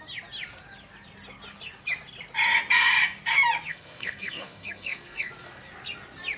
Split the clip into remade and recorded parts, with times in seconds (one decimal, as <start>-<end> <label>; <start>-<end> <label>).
0.0-3.7 recorded; 3.7-5.3 remade; 5.3-6.4 recorded